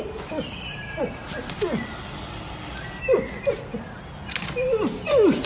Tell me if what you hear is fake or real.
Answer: real